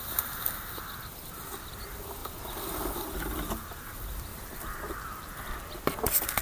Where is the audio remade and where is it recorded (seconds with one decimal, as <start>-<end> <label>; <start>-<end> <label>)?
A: 0.0-4.3 recorded; 4.3-5.4 remade; 5.4-6.4 recorded